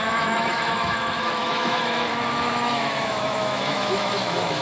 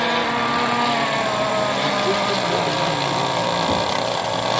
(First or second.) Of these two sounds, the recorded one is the second